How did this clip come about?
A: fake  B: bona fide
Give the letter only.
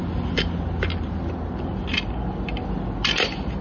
B